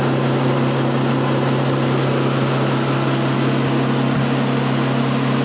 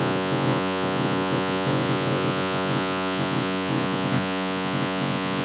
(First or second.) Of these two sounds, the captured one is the first